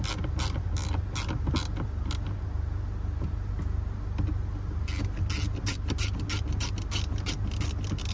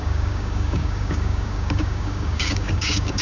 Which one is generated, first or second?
second